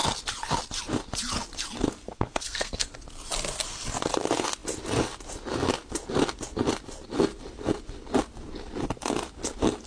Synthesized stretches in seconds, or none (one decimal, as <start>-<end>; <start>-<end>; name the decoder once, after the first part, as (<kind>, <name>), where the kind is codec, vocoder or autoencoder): 2.1-2.9 (codec, SNAC)